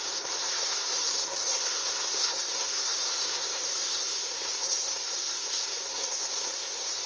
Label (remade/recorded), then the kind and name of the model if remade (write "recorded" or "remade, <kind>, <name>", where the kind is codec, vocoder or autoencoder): remade, codec, SNAC